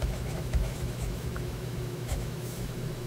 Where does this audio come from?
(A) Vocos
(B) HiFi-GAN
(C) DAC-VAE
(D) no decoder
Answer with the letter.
C